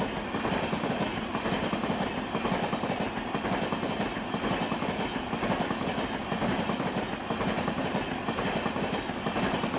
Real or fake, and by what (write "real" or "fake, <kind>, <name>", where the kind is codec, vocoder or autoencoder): real